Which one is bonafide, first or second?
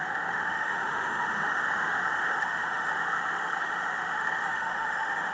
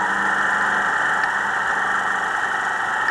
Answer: second